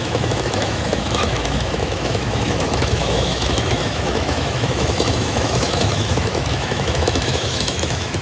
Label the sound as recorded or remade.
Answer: remade